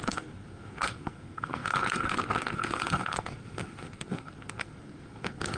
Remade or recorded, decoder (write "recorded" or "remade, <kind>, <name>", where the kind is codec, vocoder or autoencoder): remade, codec, SNAC